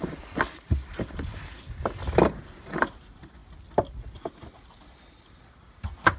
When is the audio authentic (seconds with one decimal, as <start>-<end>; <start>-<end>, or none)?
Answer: 0.0-6.2